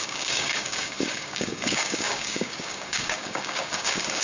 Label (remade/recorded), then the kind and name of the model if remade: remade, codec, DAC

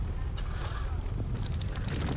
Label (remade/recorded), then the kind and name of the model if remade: recorded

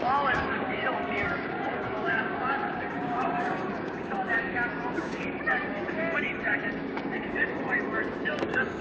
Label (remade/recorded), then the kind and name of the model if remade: remade, codec, DAC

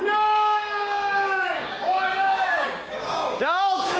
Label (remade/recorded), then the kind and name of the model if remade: remade, codec, DAC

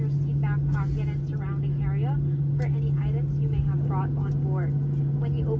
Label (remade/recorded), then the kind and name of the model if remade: recorded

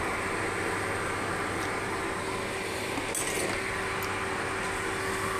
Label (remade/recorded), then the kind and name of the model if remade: recorded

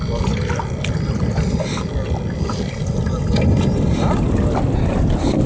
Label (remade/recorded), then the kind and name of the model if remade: recorded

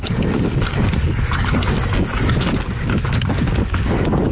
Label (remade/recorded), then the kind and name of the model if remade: remade, codec, DAC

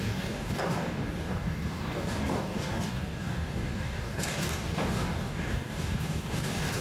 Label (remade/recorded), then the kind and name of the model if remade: remade, codec, DAC